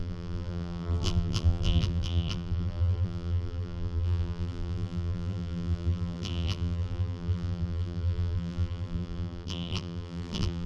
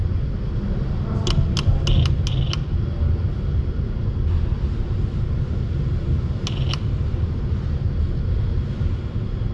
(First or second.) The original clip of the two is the second